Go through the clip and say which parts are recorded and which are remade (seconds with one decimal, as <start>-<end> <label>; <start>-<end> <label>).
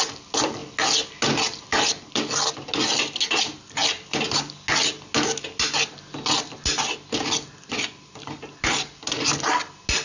0.0-10.0 recorded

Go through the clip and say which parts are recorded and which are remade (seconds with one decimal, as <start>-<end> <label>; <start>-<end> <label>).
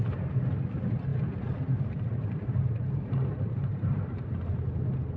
0.0-1.1 recorded; 1.1-4.2 remade; 4.2-5.2 recorded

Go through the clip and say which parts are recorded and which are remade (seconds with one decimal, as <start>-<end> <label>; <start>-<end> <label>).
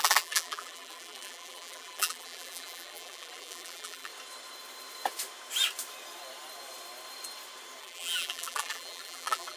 0.0-4.1 remade; 4.1-7.8 recorded; 7.8-9.6 remade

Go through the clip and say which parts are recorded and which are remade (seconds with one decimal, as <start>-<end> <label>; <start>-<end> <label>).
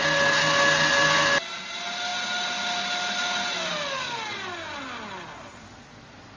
0.0-6.4 recorded